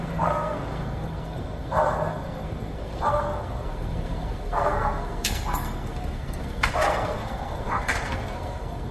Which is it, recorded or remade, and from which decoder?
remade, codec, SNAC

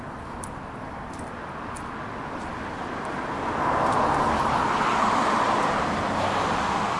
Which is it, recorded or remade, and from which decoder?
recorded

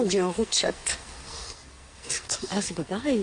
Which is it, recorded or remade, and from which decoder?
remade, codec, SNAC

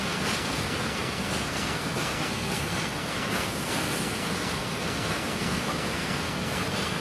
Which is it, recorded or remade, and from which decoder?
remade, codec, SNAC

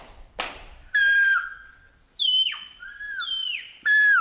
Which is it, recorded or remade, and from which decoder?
recorded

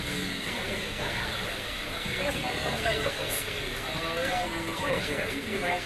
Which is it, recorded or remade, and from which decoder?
remade, codec, SNAC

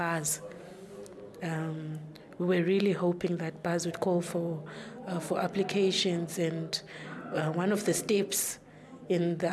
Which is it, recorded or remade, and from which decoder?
recorded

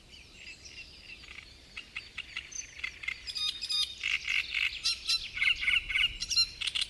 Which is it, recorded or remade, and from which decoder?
recorded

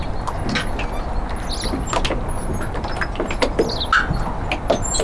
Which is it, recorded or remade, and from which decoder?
recorded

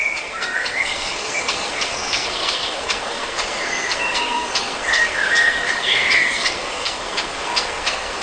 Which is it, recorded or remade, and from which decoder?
remade, codec, SNAC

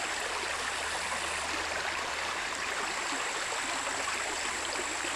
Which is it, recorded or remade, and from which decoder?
recorded